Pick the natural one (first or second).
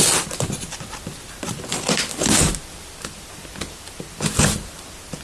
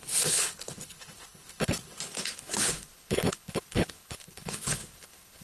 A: first